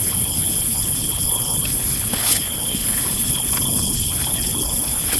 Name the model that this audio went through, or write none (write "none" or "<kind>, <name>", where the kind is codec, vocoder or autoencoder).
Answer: codec, HILCodec